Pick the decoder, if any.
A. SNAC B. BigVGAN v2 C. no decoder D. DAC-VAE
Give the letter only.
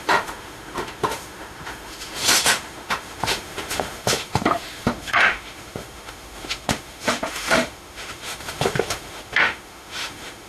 D